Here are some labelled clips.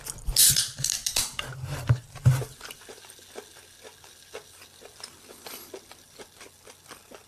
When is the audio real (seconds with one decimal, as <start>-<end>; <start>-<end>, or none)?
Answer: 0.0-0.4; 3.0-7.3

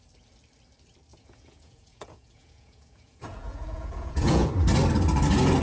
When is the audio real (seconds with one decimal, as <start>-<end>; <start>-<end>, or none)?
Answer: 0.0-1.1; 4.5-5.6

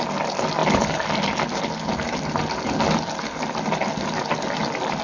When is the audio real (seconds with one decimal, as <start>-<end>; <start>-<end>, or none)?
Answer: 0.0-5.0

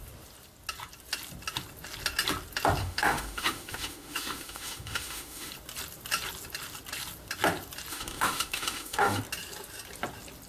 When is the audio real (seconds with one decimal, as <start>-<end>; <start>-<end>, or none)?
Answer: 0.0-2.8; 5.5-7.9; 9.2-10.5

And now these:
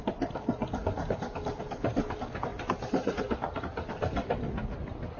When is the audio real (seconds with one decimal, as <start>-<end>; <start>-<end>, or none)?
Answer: 0.0-5.2

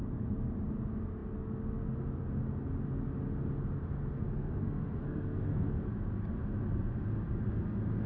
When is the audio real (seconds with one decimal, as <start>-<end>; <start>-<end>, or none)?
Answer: 0.0-4.1; 5.7-8.1

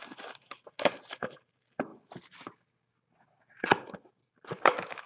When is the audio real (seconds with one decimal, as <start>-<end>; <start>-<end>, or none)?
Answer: 0.0-5.1